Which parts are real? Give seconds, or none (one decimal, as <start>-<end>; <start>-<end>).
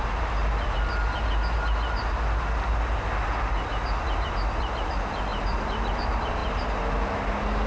0.4-4.6; 6.4-7.7